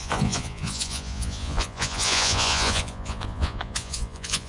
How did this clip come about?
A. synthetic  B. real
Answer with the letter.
A